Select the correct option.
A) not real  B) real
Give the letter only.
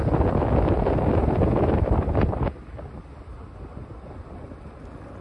B